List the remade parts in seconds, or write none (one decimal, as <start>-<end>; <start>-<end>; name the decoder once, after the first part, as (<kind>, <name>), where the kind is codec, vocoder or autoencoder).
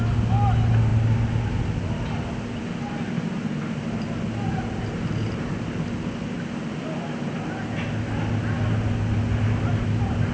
none